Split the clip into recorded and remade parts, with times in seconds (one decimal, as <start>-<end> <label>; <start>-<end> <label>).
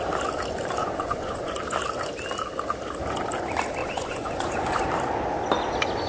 0.0-0.8 recorded; 0.8-1.5 remade; 1.5-3.8 recorded; 3.8-4.8 remade; 4.8-6.1 recorded